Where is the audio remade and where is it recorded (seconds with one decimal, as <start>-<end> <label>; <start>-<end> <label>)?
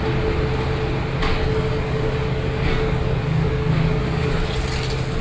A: 0.0-1.3 recorded; 1.3-4.4 remade; 4.4-5.2 recorded